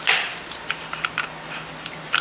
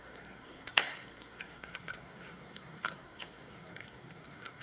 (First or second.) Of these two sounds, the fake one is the second